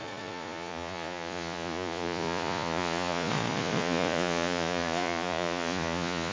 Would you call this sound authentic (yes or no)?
no